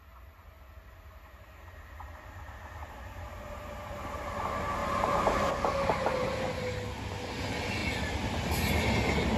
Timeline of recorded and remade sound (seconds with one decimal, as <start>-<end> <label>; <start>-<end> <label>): 0.0-2.8 recorded; 2.8-4.0 remade; 4.0-4.8 recorded; 4.8-5.5 remade; 5.5-9.4 recorded